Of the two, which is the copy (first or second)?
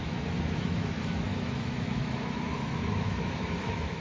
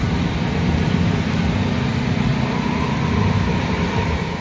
first